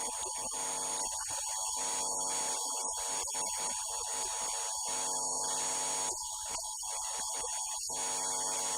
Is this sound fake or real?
real